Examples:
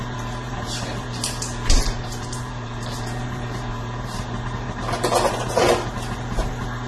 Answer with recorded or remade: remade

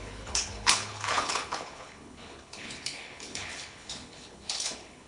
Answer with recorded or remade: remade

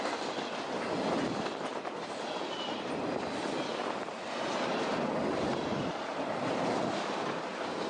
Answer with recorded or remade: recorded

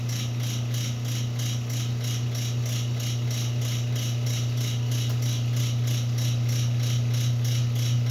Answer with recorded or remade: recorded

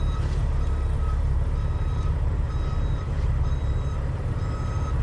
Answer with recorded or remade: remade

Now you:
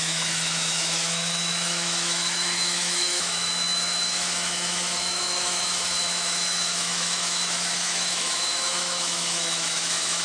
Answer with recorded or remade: remade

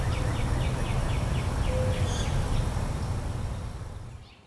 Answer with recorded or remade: recorded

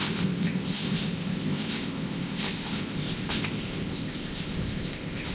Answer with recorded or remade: remade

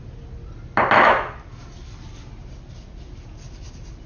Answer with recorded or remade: recorded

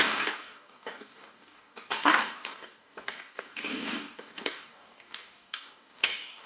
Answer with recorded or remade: remade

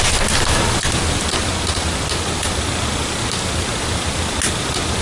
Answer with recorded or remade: recorded